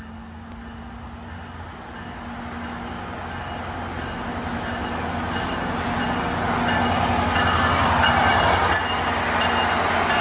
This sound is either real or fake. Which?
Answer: real